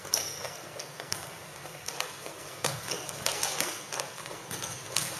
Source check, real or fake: fake